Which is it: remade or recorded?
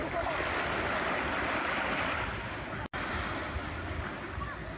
recorded